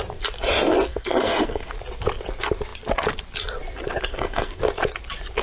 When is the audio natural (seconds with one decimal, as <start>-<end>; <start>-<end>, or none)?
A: 0.0-0.9; 1.7-4.1; 4.6-5.4